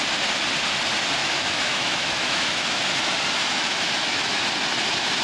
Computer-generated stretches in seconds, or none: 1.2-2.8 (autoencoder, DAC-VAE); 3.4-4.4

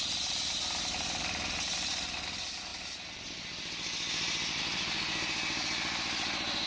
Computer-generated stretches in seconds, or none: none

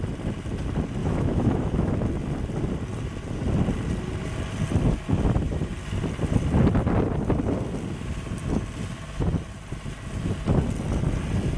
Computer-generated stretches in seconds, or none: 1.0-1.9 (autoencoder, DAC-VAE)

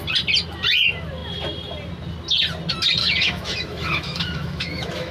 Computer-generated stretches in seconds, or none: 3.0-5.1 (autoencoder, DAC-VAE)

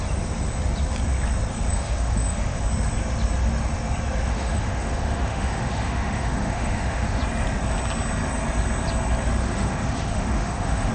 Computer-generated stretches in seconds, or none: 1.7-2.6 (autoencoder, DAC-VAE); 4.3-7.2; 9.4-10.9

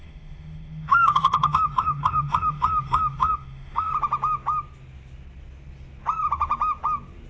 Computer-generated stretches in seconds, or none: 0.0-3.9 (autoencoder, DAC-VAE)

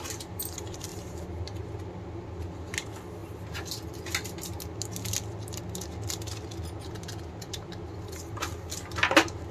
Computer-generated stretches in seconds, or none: none

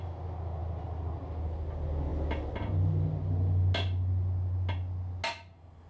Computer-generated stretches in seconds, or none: none